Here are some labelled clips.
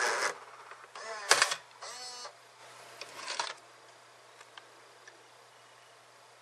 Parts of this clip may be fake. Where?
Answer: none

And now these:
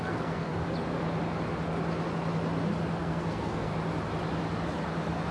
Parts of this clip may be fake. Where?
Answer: 0.0-0.5 (codec, SNAC); 3.0-3.7

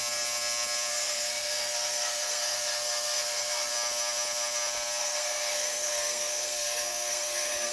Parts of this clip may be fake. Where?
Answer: 0.9-3.7 (codec, SNAC); 5.0-7.7

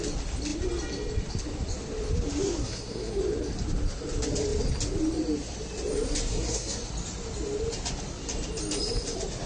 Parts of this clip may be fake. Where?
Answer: 2.6-3.2 (codec, SNAC); 6.2-6.8

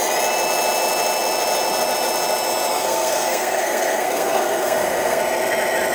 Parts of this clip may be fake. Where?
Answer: 2.7-5.2 (codec, SNAC)